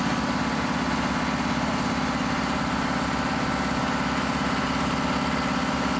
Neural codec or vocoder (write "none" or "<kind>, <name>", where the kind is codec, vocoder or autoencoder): none